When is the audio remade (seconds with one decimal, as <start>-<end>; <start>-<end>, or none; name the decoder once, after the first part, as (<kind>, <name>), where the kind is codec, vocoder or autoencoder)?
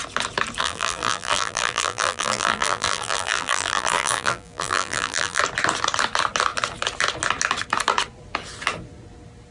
0.6-5.4 (vocoder, BigVGAN v2)